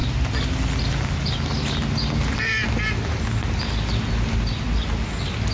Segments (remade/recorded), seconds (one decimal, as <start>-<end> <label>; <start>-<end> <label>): 0.0-5.5 recorded